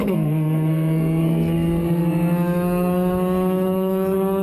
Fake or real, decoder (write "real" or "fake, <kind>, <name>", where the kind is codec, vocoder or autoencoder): fake, codec, SNAC